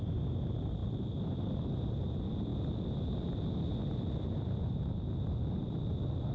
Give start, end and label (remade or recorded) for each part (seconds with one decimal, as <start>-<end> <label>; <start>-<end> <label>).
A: 0.0-6.3 recorded